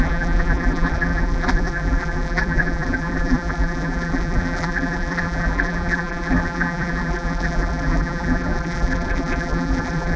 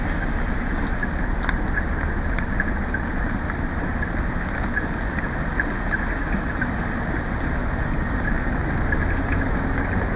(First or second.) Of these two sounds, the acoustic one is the second